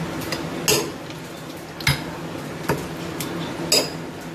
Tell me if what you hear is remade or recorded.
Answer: recorded